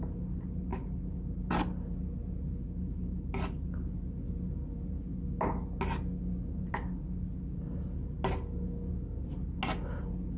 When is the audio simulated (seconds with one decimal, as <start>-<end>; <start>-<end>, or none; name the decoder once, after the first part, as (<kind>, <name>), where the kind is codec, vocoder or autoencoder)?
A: none